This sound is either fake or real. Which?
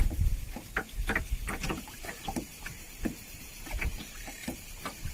fake